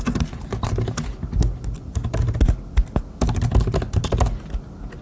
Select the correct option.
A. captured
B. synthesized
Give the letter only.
A